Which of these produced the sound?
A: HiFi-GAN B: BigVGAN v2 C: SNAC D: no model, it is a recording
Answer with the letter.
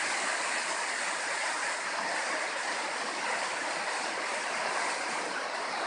D